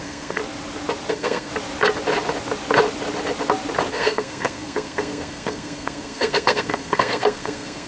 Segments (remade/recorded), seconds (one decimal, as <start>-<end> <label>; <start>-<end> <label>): 0.0-0.4 remade; 0.4-1.1 recorded; 1.1-1.5 remade; 1.5-3.9 recorded; 3.9-7.9 remade